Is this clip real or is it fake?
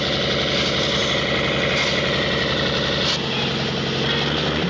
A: real